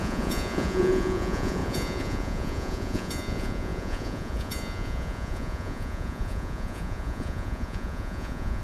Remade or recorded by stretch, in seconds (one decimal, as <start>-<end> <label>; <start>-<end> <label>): 0.0-8.6 remade